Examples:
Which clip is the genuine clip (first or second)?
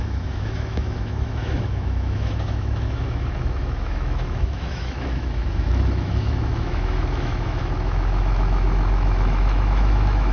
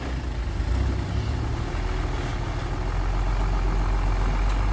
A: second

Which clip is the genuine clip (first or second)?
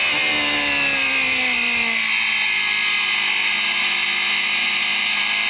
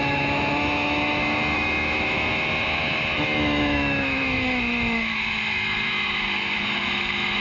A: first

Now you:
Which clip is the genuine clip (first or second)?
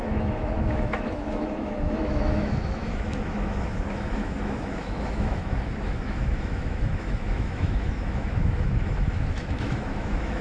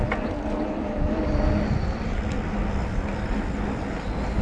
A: second